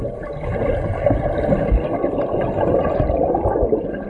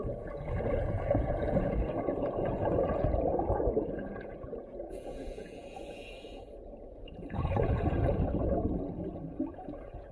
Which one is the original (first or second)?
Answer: first